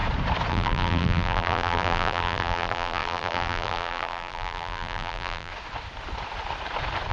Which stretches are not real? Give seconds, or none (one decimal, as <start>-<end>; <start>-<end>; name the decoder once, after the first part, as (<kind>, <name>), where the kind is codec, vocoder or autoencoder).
0.5-5.5 (vocoder, BigVGAN v2)